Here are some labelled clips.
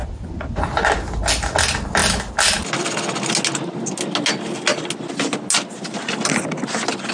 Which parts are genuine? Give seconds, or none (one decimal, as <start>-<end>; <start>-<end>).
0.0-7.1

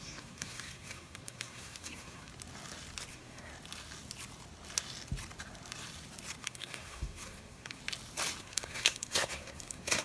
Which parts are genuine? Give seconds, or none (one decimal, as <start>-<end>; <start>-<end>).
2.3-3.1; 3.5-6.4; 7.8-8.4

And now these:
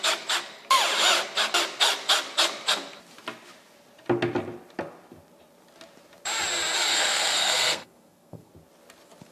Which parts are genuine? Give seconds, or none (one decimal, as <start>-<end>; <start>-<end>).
0.0-6.9; 8.5-9.3

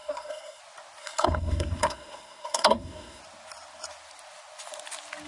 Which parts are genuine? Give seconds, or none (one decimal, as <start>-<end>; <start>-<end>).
0.6-1.0; 3.2-5.3

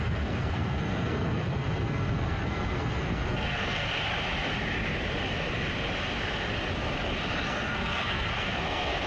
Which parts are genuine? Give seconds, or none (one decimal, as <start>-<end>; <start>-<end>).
3.9-7.4